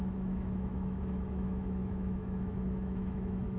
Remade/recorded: remade